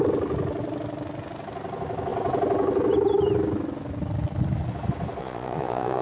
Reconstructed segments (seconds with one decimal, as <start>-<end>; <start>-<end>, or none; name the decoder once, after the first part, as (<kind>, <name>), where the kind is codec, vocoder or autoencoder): 5.2-6.0 (vocoder, Vocos)